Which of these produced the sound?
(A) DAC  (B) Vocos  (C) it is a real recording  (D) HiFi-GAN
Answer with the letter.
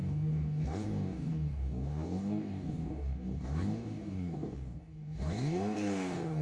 A